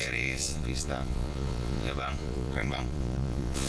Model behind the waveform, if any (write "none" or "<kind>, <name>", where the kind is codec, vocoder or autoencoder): vocoder, Vocos